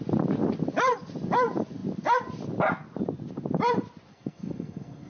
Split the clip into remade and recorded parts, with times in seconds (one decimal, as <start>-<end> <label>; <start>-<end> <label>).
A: 0.0-4.1 recorded; 4.1-5.1 remade